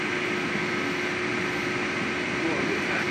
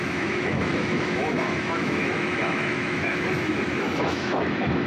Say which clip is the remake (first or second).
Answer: second